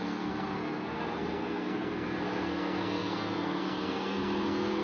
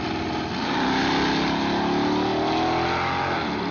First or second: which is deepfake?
first